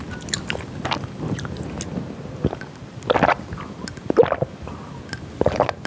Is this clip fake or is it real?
real